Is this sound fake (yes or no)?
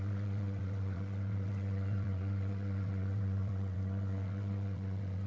yes